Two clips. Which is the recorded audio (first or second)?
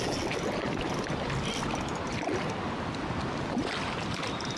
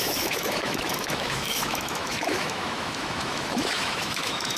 first